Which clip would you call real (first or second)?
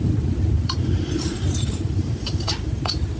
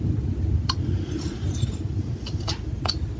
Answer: second